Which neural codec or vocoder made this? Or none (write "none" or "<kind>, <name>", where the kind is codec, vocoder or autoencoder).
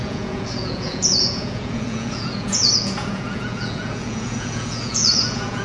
vocoder, Vocos